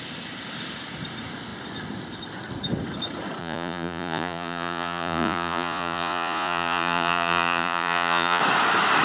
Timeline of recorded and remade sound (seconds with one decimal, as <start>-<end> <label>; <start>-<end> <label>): 0.0-3.4 recorded; 3.4-8.4 remade; 8.4-9.0 recorded